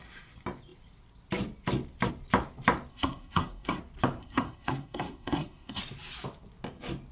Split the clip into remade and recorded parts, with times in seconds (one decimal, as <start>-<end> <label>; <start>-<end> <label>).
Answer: 0.0-2.9 recorded; 2.9-3.8 remade; 3.8-4.2 recorded; 4.2-5.8 remade; 5.8-7.1 recorded